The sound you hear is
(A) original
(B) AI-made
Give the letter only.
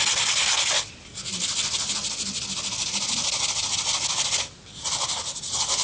A